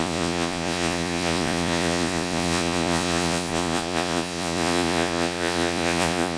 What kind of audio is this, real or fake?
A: fake